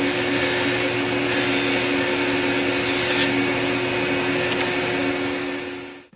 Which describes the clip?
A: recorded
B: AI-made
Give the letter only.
A